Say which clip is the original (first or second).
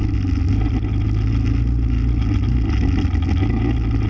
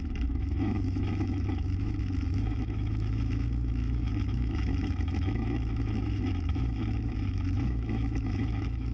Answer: first